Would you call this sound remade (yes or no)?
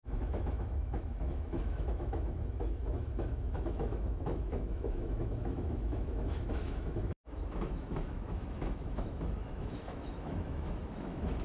yes